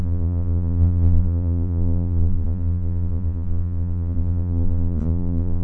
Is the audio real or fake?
fake